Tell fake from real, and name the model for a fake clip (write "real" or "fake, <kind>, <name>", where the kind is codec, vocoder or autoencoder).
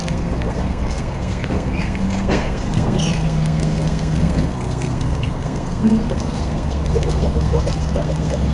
fake, codec, SNAC